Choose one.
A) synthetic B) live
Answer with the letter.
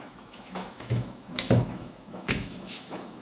A